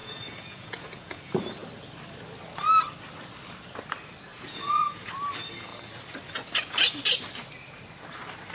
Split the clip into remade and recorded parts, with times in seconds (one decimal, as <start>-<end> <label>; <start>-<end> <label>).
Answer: 0.0-1.2 remade; 1.2-4.3 recorded; 4.3-5.1 remade; 5.1-8.5 recorded